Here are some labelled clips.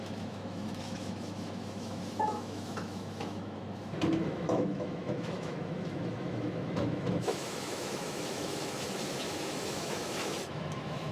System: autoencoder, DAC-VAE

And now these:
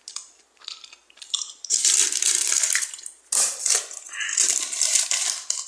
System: none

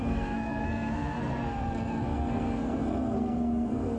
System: codec, SNAC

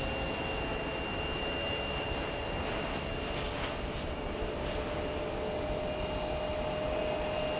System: none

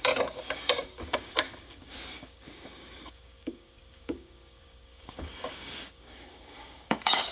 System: codec, DAC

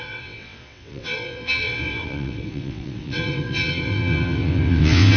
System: vocoder, WaveNeXt